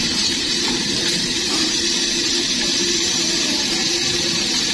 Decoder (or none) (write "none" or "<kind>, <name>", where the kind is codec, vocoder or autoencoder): vocoder, BigVGAN v2